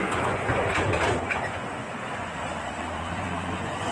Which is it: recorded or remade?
remade